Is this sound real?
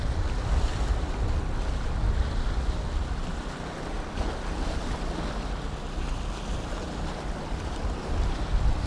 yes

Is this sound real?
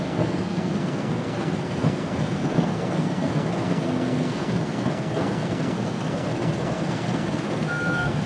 no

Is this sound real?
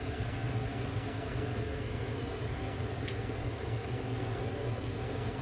no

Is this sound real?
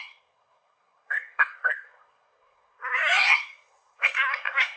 no